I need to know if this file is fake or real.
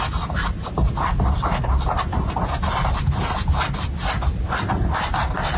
real